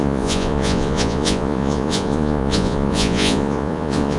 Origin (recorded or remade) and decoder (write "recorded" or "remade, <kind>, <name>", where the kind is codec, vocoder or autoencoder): remade, vocoder, Vocos